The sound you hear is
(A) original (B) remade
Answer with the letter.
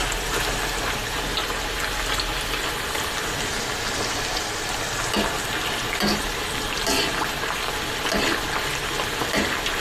A